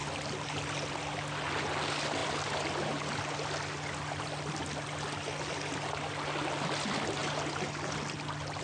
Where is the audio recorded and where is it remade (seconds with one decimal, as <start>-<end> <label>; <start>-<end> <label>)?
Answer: 0.0-8.6 recorded